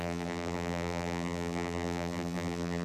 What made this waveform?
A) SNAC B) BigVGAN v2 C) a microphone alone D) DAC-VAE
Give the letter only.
B